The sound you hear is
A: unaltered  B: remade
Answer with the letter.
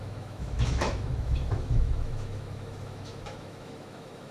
B